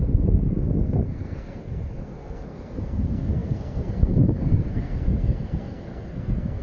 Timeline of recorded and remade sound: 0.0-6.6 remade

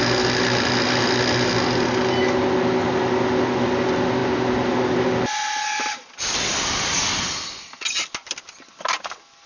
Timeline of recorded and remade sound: 0.0-9.5 recorded

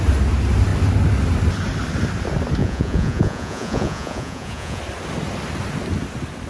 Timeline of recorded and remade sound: 0.0-2.6 recorded; 2.6-4.8 remade; 4.8-6.5 recorded

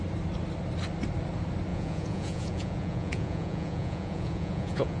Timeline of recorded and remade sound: 0.0-1.7 recorded; 1.7-5.0 remade

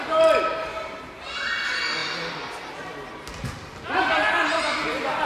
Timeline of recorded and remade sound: 0.0-5.3 recorded

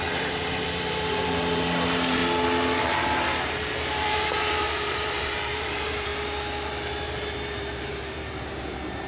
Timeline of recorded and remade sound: 0.0-2.2 remade; 2.2-2.8 recorded; 2.8-6.1 remade; 6.1-7.0 recorded; 7.0-9.1 remade